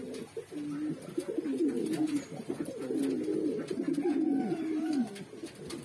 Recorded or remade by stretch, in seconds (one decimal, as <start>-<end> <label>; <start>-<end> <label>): 0.0-1.6 recorded; 1.6-5.1 remade; 5.1-5.8 recorded